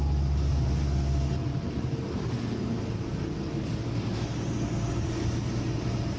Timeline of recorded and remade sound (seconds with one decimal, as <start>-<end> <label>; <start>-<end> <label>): 0.0-6.2 recorded